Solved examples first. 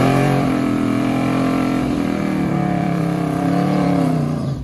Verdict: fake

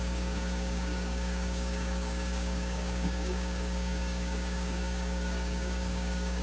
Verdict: fake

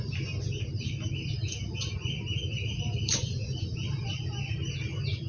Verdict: fake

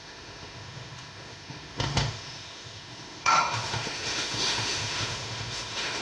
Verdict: fake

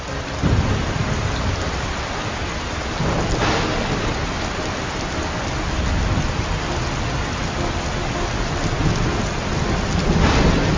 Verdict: real